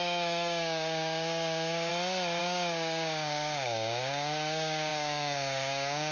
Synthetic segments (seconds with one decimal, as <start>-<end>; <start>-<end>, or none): 0.0-1.9; 2.4-6.1